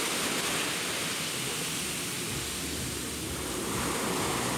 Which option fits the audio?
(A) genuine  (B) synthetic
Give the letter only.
A